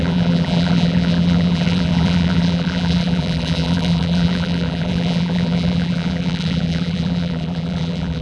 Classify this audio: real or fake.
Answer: fake